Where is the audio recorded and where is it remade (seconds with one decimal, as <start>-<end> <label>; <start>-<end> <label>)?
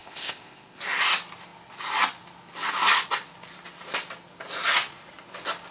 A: 0.0-0.8 remade; 0.8-5.7 recorded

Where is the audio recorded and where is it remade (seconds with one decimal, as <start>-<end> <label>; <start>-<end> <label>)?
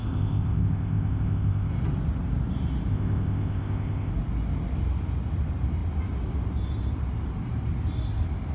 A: 0.0-1.7 remade; 1.7-2.9 recorded; 2.9-4.1 remade; 4.1-8.5 recorded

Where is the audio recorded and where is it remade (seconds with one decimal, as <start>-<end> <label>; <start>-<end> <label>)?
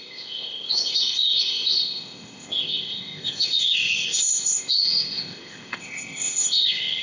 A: 0.0-7.0 remade